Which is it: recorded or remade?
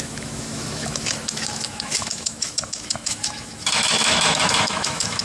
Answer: remade